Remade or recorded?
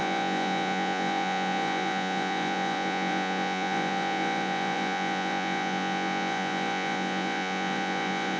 remade